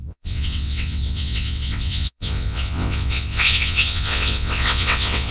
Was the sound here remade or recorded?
remade